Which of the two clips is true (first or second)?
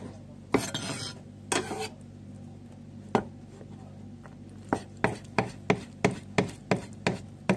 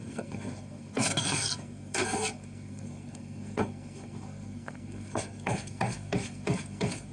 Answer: first